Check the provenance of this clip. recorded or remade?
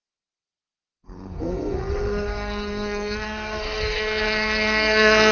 remade